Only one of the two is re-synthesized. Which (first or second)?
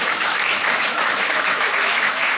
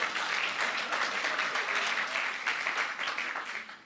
first